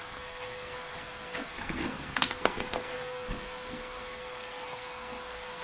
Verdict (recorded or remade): remade